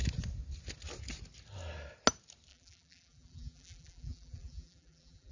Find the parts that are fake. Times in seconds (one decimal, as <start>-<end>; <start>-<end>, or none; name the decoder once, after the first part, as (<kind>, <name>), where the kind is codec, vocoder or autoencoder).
2.5-5.3 (vocoder, BigVGAN v2)